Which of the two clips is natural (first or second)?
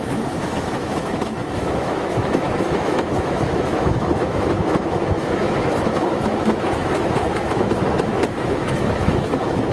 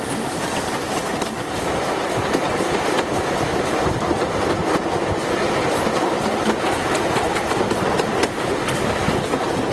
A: second